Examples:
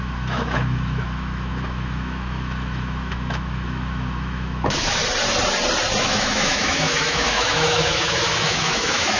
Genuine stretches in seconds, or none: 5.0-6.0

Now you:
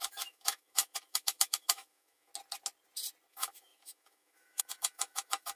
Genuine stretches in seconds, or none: 2.3-3.3

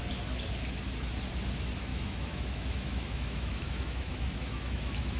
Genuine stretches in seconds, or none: 0.0-1.9

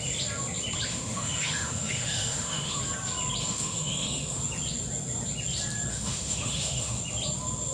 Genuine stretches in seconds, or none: 0.0-0.9; 2.8-3.4; 4.4-5.9; 7.0-7.7

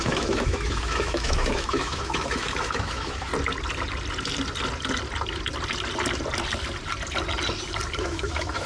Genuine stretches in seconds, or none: 3.3-8.0

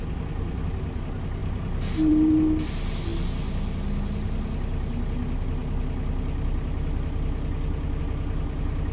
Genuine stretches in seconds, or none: 0.0-8.9

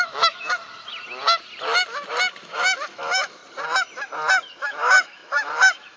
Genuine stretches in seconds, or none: 0.9-2.4; 3.4-4.6